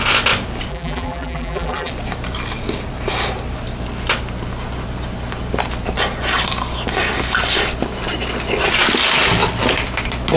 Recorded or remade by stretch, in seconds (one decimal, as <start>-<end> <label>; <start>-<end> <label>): 0.0-0.7 recorded; 0.7-1.9 remade; 1.9-10.4 recorded